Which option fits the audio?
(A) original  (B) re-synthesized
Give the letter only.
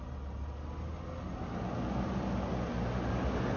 A